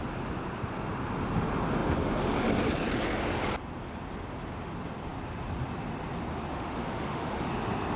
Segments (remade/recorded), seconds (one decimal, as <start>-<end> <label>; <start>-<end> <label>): 0.0-6.5 recorded; 6.5-7.5 remade; 7.5-8.0 recorded

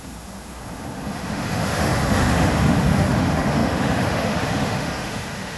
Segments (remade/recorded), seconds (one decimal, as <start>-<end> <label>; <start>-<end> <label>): 0.0-5.6 remade